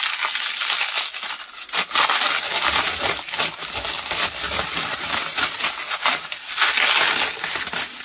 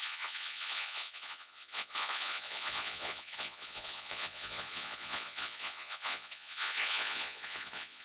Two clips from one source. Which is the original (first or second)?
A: first